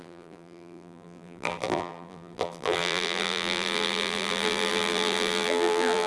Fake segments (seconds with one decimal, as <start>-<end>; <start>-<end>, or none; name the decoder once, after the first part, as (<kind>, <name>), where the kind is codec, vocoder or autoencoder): 0.0-6.1 (vocoder, BigVGAN v2)